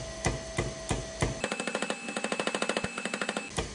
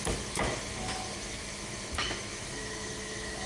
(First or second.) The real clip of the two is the first